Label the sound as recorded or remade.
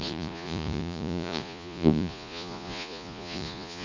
remade